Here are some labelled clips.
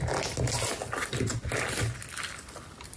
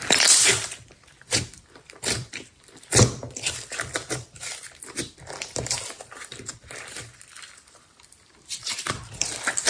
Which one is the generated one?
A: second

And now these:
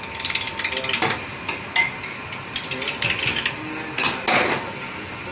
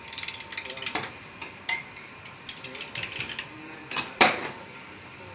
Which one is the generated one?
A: second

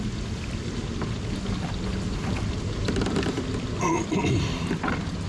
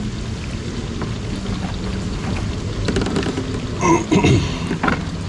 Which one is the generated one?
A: first